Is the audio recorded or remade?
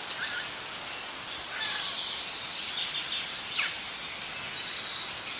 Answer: recorded